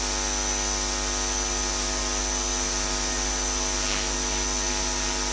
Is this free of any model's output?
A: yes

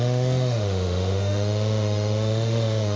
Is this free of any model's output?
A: no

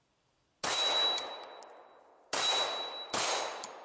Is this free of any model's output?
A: yes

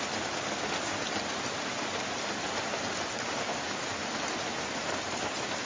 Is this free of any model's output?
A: yes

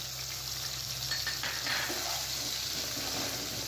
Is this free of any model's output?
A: yes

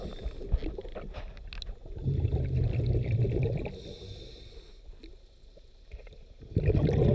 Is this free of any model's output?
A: yes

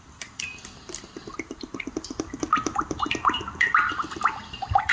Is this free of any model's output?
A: no